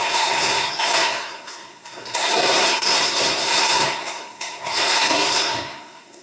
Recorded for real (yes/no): no